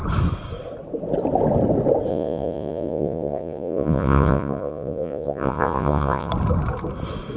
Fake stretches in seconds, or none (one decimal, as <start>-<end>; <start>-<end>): 2.1-6.3